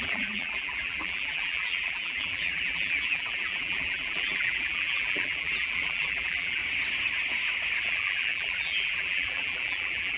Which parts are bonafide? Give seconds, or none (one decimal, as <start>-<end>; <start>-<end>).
6.6-7.8